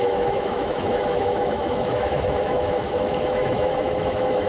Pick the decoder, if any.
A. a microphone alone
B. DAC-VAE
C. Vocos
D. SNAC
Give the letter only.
B